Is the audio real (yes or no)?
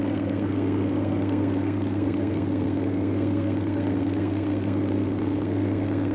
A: no